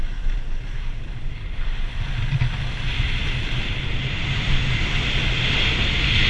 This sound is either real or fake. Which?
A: real